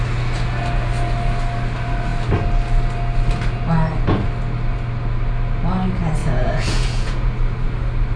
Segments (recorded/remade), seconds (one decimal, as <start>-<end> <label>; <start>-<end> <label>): 0.0-6.2 recorded; 6.2-7.3 remade; 7.3-8.2 recorded